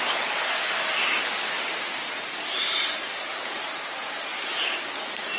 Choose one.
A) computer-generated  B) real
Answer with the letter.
B